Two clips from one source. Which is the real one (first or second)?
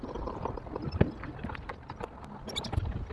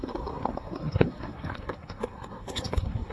first